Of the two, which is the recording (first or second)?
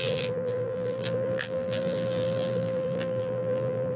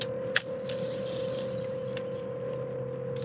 second